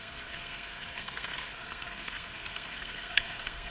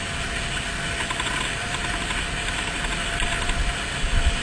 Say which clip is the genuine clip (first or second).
second